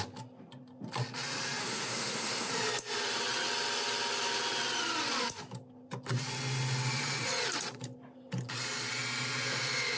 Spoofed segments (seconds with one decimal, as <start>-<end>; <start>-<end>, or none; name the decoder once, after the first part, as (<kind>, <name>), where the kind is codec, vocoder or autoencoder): 1.6-2.5 (codec, SNAC)